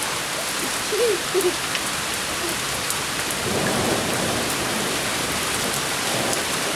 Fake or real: fake